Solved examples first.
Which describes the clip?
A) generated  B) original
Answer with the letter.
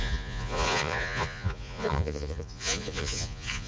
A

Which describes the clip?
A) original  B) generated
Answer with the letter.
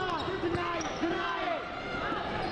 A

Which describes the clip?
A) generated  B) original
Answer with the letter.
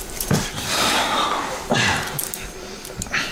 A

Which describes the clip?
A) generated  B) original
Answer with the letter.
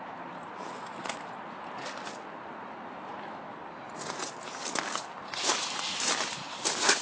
B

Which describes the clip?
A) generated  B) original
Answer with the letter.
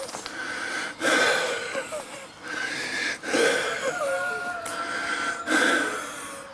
B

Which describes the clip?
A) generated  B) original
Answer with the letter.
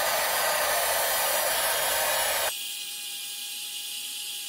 B